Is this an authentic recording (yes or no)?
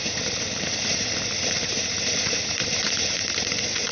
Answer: yes